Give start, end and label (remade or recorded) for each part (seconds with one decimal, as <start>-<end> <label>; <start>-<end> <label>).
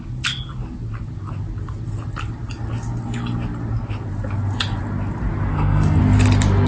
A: 0.0-5.5 recorded; 5.5-6.0 remade; 6.0-6.7 recorded